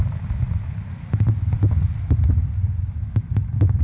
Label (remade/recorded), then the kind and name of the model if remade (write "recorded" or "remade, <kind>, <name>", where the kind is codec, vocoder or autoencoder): recorded